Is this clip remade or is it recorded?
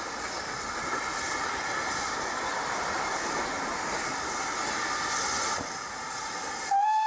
recorded